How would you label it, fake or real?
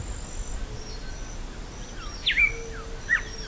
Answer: real